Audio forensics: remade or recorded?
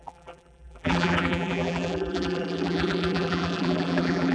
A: remade